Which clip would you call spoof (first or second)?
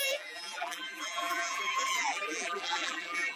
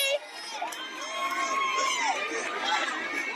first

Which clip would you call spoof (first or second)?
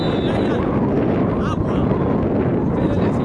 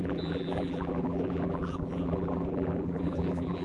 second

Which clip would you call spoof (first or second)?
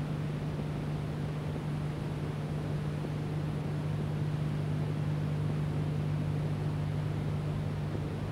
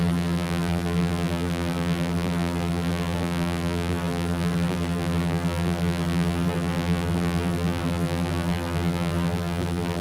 second